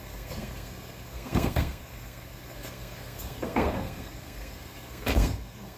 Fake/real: fake